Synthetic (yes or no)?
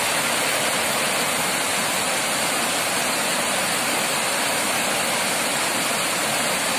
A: no